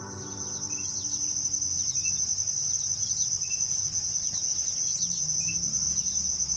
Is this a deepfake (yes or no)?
no